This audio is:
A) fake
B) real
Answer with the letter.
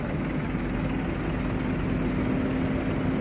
B